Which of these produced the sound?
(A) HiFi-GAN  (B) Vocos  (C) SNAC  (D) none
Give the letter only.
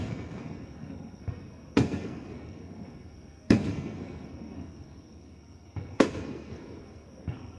C